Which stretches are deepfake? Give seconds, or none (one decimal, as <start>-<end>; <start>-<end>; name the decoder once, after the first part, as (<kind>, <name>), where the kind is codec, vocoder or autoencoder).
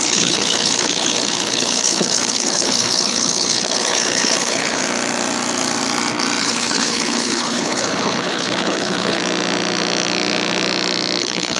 0.0-4.8 (codec, HILCodec); 6.4-9.2; 11.2-11.6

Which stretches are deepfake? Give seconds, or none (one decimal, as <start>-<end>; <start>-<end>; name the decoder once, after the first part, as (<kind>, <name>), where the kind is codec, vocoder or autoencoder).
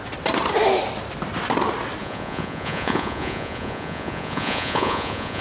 2.0-5.4 (vocoder, Vocos)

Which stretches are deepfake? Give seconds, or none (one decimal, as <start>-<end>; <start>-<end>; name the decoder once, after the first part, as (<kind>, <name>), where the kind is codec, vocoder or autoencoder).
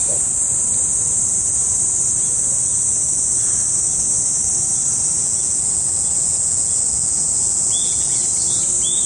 5.2-8.2 (vocoder, Vocos)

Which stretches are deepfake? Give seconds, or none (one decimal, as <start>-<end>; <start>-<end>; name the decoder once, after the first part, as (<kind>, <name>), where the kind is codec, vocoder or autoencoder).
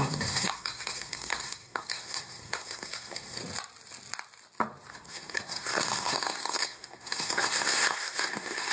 0.0-3.4 (codec, SNAC); 4.9-8.7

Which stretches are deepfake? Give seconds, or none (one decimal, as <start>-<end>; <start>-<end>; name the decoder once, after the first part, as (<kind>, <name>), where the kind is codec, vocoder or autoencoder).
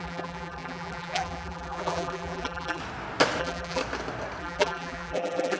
0.0-2.8 (vocoder, BigVGAN v2); 3.4-3.8; 4.4-5.6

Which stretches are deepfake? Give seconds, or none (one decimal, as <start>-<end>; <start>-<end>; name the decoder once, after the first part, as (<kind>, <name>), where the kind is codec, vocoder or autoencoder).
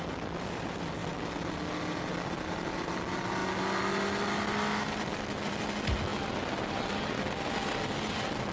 none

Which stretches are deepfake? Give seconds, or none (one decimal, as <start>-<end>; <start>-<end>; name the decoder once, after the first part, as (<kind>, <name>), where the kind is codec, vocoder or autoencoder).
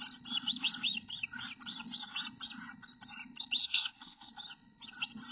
3.6-4.3 (codec, SNAC)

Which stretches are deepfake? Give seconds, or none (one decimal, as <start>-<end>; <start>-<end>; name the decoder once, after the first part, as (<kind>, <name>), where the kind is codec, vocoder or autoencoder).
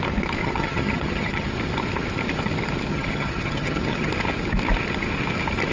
0.4-1.5 (vocoder, HiFi-GAN); 2.9-4.1